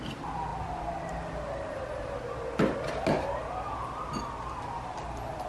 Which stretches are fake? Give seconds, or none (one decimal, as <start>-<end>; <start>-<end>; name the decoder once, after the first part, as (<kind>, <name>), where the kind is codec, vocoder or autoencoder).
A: none